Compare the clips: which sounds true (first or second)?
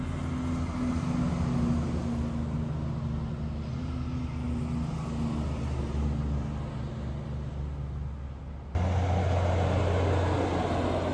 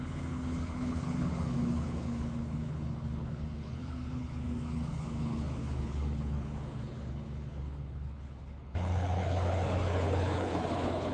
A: first